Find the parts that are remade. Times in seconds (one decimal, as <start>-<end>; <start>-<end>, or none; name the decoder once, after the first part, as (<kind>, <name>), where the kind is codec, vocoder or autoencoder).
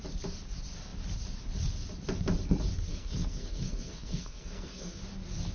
2.9-5.0 (codec, SNAC)